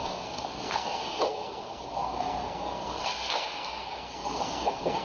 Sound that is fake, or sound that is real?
fake